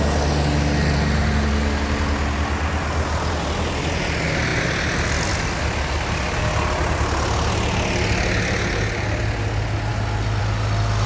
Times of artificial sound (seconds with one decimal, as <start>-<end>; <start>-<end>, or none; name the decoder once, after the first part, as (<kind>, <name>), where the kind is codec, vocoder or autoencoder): none